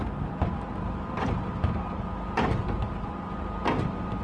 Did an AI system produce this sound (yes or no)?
no